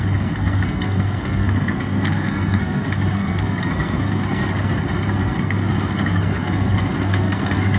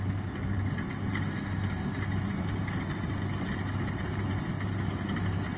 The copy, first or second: first